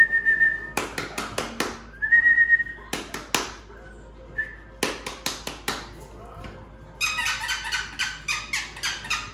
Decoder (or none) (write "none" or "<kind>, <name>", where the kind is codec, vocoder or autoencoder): none